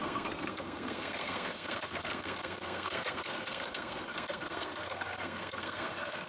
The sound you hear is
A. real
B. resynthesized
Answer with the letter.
B